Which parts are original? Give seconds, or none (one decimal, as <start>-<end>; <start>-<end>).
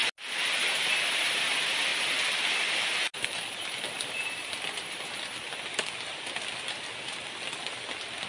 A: 0.0-8.3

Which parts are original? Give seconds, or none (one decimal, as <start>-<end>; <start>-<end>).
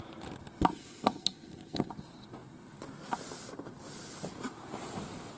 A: 0.0-0.7; 1.9-5.4